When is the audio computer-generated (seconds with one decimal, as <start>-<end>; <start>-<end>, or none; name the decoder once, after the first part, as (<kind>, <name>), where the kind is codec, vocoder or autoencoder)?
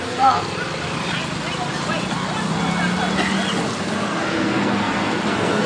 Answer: 0.0-0.4 (codec, SNAC); 3.8-5.7